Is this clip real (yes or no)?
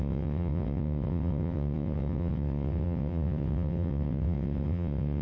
no